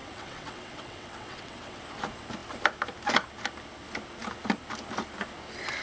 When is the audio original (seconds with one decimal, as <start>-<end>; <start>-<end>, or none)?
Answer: 1.8-5.8